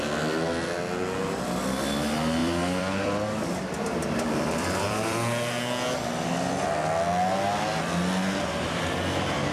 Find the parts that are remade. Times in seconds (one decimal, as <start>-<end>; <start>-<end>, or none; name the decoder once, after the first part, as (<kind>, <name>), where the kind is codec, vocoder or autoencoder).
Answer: 2.4-5.5 (vocoder, BigVGAN v2)